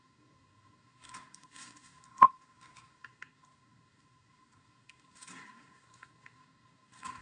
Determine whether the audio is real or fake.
fake